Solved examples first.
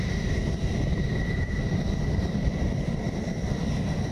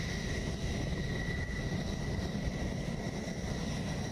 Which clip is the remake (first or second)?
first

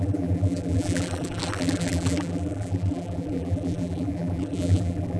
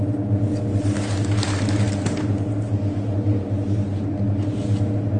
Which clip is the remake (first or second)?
first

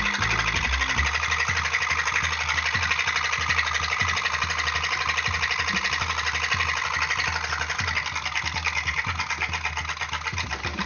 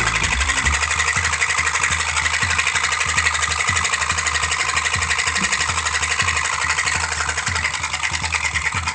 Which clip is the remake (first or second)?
second